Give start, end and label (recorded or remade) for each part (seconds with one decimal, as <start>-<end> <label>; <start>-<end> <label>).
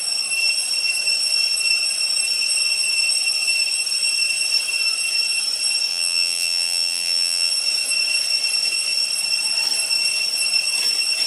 0.0-5.9 recorded; 5.9-7.5 remade; 7.5-11.3 recorded